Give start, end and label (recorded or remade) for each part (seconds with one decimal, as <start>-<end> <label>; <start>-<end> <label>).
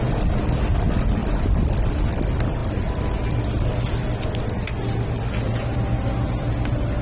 0.0-7.0 recorded